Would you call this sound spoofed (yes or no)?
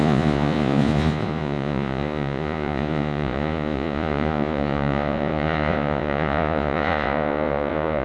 yes